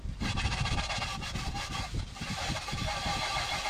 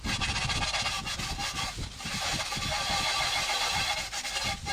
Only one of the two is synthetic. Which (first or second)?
first